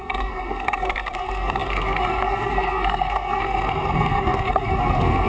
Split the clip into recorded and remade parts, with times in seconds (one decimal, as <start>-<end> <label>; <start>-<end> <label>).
0.0-5.3 remade